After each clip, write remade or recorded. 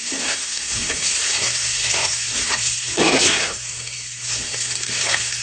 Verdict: remade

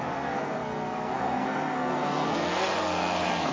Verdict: remade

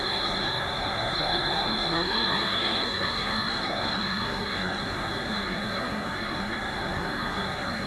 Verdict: remade